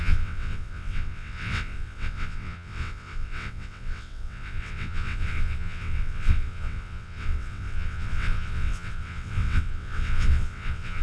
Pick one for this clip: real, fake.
fake